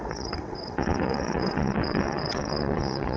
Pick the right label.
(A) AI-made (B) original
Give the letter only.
A